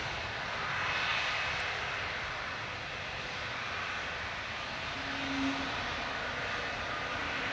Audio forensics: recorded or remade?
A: recorded